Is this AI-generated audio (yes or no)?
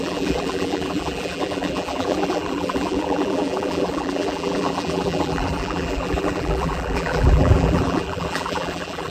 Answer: yes